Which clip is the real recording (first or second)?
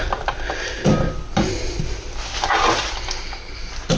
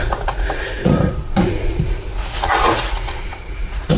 first